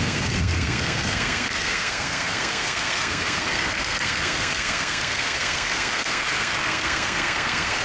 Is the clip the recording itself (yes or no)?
no